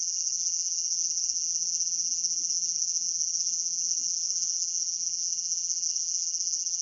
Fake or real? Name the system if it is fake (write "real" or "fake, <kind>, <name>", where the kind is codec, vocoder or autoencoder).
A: fake, vocoder, BigVGAN v2